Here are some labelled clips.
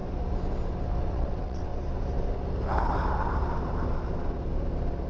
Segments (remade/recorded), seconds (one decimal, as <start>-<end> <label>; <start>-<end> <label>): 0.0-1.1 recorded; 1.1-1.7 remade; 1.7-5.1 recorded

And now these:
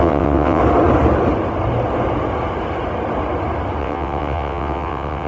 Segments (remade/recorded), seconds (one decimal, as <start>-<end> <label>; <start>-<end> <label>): 0.0-0.6 remade; 0.6-3.8 recorded; 3.8-5.3 remade

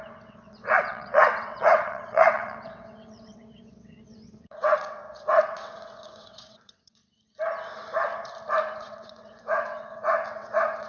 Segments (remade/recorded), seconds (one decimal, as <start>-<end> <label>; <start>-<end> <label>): 0.0-7.0 remade; 7.0-8.8 recorded; 8.8-10.9 remade

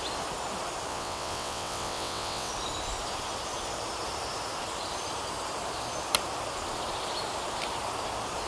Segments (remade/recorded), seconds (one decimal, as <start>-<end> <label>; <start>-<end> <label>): 0.0-0.9 recorded; 0.9-2.5 remade; 2.5-8.5 recorded